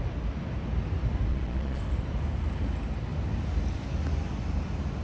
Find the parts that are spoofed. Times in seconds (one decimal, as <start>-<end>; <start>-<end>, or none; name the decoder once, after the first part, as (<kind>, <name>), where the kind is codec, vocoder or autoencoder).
1.3-1.8 (vocoder, Vocos)